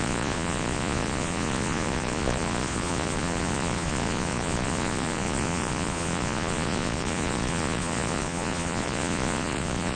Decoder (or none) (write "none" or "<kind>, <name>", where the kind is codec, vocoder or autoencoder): vocoder, Vocos